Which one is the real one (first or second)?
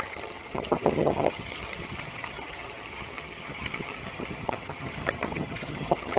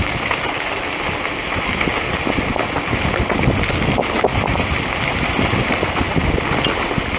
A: second